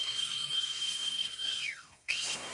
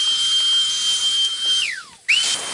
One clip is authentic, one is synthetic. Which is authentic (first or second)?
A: second